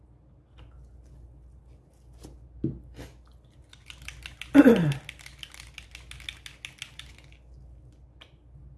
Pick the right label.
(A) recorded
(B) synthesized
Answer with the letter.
A